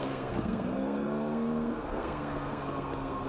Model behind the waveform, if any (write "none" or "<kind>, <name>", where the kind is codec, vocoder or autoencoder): codec, SNAC